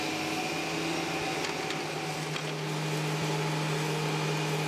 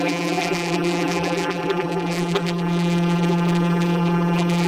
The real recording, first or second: first